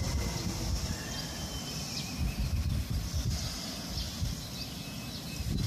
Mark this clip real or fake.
real